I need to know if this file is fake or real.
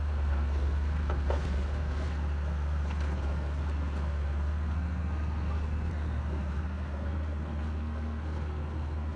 fake